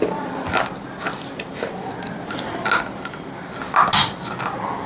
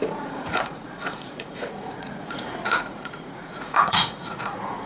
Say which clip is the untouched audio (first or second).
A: first